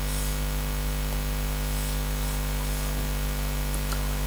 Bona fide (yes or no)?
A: yes